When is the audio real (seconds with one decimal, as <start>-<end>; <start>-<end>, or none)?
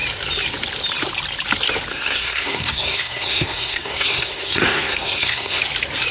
0.0-1.9; 5.6-6.1